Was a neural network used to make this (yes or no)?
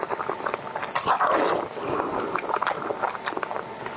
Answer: no